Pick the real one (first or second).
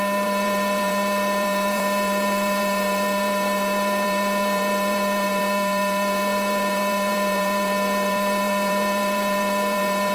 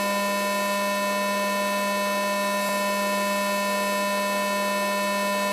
second